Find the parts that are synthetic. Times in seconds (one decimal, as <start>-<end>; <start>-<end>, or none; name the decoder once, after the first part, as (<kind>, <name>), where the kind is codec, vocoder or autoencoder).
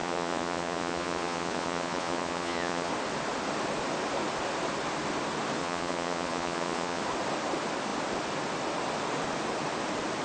0.0-2.9 (vocoder, Vocos); 5.6-7.0